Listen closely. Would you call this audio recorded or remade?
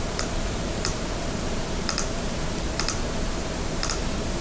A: remade